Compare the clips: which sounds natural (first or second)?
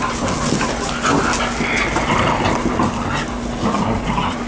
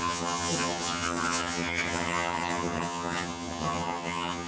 first